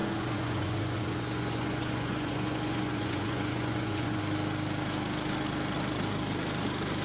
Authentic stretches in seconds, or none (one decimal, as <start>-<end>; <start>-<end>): 4.2-7.0